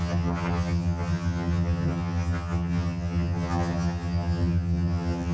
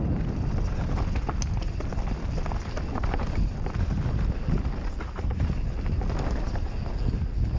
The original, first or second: second